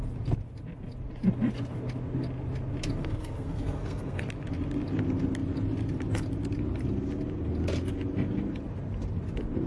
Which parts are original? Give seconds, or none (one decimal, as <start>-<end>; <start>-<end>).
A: 0.0-3.0; 4.2-9.7